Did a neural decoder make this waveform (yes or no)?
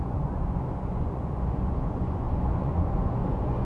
yes